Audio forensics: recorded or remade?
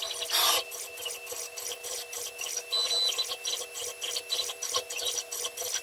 recorded